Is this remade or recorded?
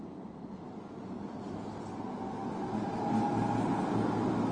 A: recorded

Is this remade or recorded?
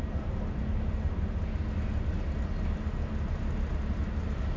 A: recorded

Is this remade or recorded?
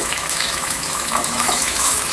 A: remade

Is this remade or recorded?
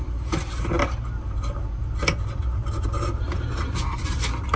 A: recorded